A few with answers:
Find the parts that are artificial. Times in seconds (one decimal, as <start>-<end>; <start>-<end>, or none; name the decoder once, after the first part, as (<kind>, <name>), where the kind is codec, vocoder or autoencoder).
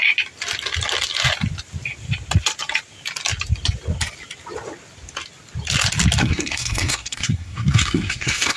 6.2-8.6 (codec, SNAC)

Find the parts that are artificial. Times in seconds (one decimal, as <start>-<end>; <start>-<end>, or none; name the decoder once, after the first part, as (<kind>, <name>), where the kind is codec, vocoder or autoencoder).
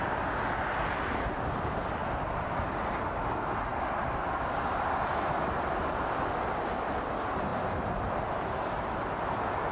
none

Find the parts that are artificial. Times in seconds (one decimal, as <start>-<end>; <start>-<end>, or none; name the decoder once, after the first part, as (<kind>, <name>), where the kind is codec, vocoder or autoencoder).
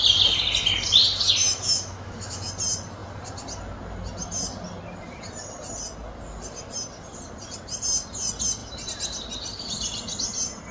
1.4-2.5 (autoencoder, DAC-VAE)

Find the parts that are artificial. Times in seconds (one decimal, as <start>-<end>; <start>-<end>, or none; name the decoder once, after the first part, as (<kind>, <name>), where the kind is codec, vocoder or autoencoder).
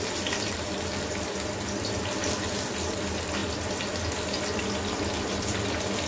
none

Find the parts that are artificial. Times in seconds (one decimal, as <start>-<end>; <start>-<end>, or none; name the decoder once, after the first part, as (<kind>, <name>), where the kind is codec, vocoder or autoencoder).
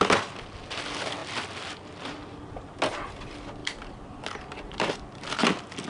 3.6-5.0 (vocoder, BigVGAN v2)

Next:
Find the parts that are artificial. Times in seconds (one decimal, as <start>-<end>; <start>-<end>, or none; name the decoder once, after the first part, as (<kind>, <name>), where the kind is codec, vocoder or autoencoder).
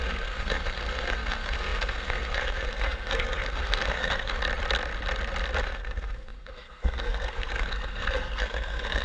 0.0-4.4 (codec, SNAC); 5.6-9.0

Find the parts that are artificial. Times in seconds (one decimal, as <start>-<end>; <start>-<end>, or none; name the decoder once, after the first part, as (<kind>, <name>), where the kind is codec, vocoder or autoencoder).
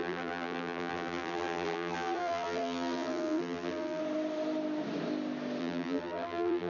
0.0-4.0 (vocoder, BigVGAN v2); 5.6-6.7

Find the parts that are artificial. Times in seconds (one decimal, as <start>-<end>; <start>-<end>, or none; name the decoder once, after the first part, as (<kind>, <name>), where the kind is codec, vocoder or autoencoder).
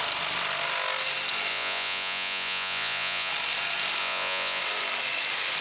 1.5-3.3 (vocoder, Vocos); 4.0-4.6